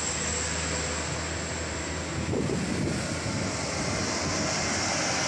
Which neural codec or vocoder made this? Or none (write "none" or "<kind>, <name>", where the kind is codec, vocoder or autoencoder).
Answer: none